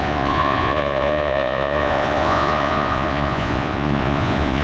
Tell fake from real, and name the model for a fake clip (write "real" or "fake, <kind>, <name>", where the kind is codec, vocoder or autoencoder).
fake, vocoder, Vocos